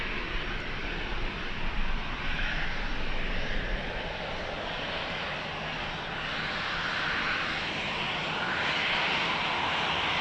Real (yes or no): yes